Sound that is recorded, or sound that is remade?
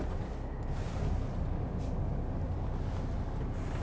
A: recorded